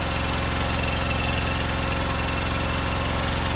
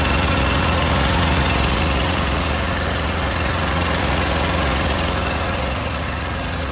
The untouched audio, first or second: first